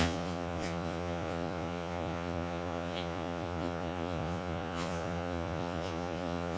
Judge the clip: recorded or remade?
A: remade